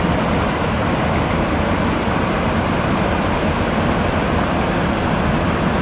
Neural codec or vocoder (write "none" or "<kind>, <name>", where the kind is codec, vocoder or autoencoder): none